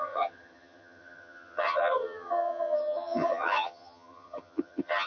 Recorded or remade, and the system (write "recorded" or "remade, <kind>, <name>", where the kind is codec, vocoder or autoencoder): remade, vocoder, HiFi-GAN